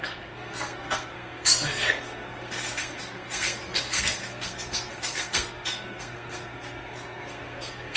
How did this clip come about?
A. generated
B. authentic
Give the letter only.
A